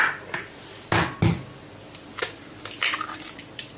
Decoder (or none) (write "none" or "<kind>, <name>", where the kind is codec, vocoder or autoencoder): none